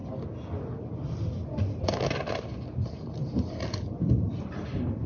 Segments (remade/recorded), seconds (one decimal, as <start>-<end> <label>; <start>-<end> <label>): 0.0-5.1 recorded